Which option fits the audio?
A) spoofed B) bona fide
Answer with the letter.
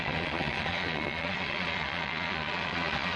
A